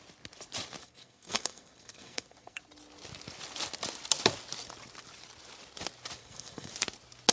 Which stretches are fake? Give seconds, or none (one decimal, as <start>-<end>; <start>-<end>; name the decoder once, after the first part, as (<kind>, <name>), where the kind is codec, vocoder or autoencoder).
0.8-2.6 (codec, SNAC); 6.2-6.7